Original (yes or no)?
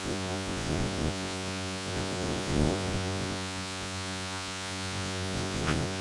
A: no